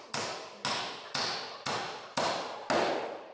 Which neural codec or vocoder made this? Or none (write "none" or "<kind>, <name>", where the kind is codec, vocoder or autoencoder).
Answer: none